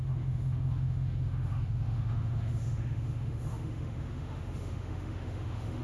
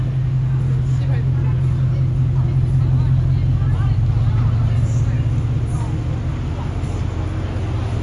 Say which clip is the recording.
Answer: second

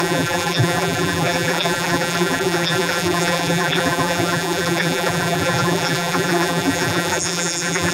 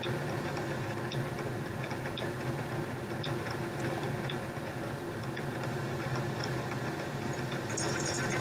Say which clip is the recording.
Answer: second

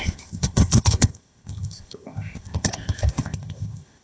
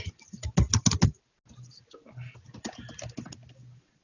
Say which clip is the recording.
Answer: second